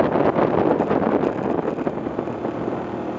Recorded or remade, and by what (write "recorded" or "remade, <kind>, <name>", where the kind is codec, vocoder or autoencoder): recorded